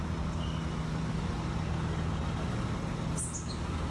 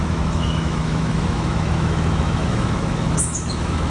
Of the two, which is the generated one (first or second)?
second